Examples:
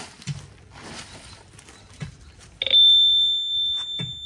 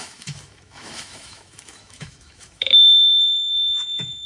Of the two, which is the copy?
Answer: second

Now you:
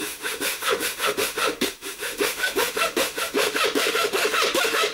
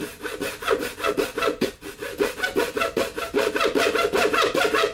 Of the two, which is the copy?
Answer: first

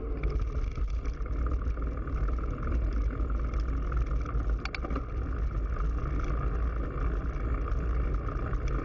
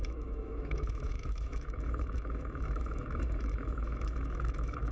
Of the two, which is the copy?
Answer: second